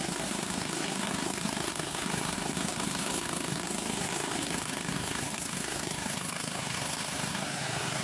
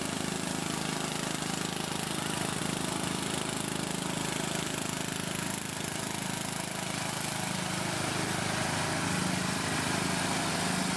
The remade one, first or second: first